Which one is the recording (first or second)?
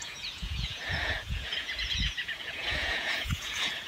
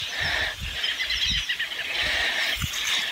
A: second